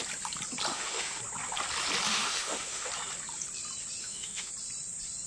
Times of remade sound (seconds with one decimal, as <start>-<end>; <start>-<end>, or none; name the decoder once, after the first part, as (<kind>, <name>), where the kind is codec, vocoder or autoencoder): 0.7-1.2 (autoencoder, DAC-VAE); 2.1-2.9; 4.0-4.5